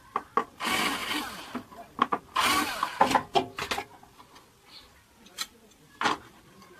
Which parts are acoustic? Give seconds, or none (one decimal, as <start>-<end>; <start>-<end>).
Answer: 1.0-4.7